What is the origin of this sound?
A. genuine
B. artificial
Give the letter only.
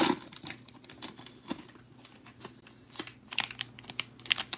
A